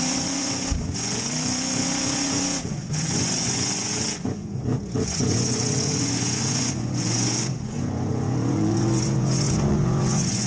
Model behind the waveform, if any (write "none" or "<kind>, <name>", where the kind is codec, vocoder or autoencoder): vocoder, Vocos